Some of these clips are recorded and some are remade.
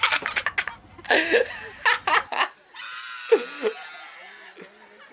recorded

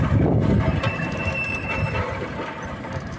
remade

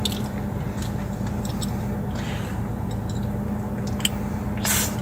recorded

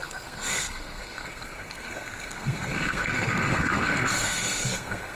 remade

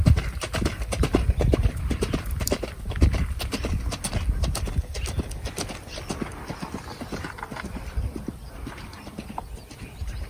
remade